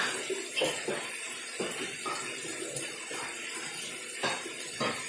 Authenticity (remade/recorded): recorded